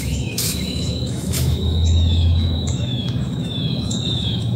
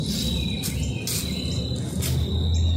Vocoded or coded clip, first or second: first